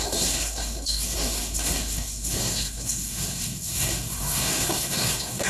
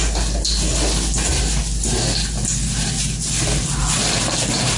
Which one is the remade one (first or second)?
first